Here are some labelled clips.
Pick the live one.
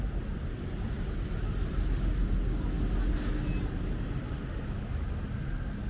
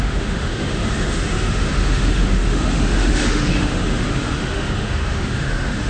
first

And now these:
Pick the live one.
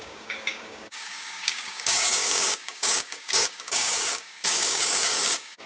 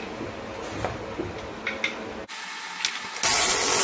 second